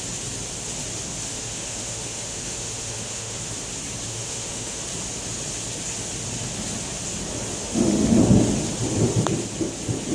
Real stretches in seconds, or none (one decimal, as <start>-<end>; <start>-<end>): 0.0-1.3; 3.5-4.1; 4.8-7.6; 8.2-10.1